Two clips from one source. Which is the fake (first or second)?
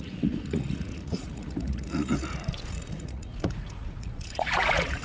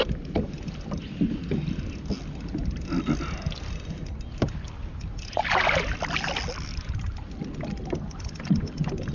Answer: first